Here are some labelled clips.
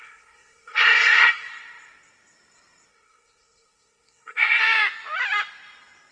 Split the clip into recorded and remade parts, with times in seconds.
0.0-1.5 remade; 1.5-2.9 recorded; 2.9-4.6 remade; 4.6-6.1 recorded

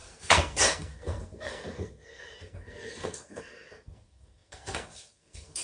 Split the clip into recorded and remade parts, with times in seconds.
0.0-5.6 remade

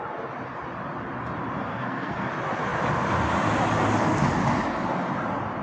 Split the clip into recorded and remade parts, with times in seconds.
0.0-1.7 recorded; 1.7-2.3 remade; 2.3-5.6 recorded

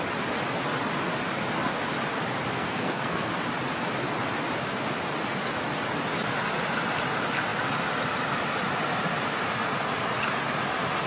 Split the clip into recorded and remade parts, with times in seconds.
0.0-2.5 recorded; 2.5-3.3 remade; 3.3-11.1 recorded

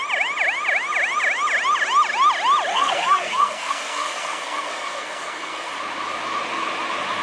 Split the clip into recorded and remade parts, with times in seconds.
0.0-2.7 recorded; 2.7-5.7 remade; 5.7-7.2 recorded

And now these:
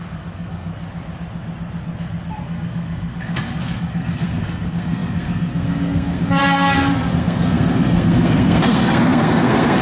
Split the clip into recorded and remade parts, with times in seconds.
0.0-0.7 remade; 0.7-2.4 recorded; 2.4-9.8 remade

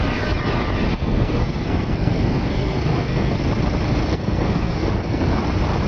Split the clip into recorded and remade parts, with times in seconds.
0.0-0.9 recorded; 0.9-3.4 remade; 3.4-4.1 recorded; 4.1-5.4 remade; 5.4-5.9 recorded

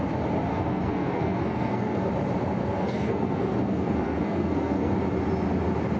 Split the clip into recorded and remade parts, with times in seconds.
0.0-0.5 recorded; 0.5-2.1 remade; 2.1-2.6 recorded; 2.6-4.9 remade; 4.9-6.0 recorded